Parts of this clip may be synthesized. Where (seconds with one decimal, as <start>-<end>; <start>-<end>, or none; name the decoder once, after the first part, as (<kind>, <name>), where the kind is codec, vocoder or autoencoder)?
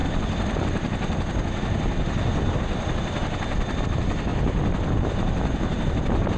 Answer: none